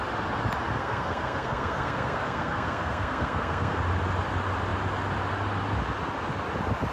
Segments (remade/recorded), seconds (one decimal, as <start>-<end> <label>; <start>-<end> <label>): 0.0-0.8 recorded; 0.8-3.8 remade; 3.8-6.9 recorded